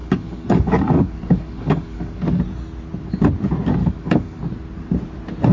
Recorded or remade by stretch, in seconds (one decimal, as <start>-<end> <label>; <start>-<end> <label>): 0.0-2.4 remade; 2.4-3.8 recorded; 3.8-4.4 remade; 4.4-5.5 recorded